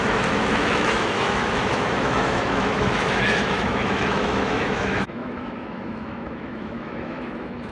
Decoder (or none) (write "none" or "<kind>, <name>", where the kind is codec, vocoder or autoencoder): autoencoder, DAC-VAE